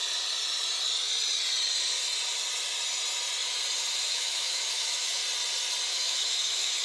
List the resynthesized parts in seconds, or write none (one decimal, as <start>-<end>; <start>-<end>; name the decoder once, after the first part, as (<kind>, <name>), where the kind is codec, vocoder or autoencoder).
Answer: 4.1-5.2 (autoencoder, DAC-VAE); 5.9-6.8